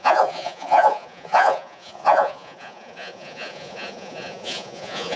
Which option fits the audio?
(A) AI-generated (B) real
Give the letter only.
A